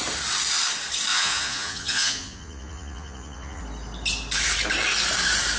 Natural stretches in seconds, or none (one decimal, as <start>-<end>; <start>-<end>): 0.0-1.1; 3.6-5.6